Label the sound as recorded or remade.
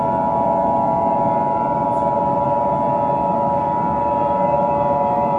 remade